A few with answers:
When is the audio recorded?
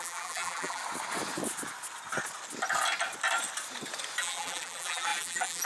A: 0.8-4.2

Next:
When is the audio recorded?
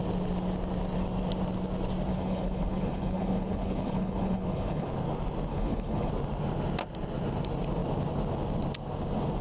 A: 0.0-2.1; 4.9-5.5; 6.1-9.4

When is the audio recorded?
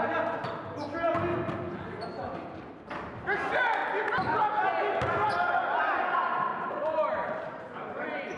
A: 0.0-6.5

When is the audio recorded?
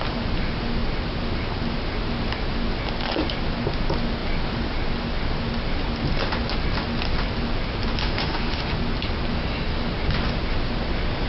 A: 0.0-8.0; 8.7-11.3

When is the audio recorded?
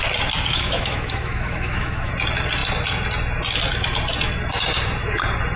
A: 0.0-0.5; 2.1-5.6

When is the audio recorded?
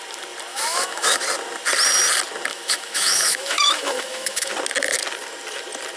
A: 0.0-0.5; 1.2-2.5; 4.5-6.0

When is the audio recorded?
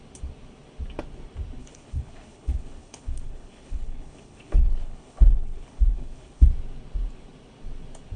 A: 0.0-1.6; 6.5-8.2